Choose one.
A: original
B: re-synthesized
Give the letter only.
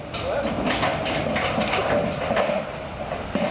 A